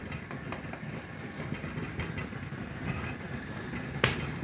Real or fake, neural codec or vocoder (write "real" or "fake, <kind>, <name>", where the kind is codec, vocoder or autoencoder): real